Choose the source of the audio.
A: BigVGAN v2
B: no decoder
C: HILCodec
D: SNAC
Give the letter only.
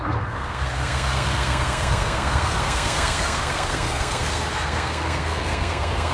D